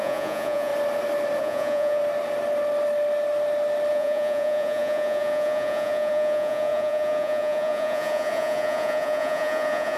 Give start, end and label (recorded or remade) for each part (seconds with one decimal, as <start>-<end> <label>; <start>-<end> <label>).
0.0-0.7 remade; 0.7-1.4 recorded; 1.4-2.0 remade; 2.0-3.9 recorded; 3.9-10.0 remade